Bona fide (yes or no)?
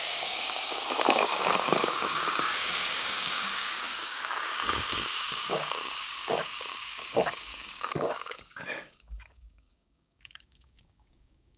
no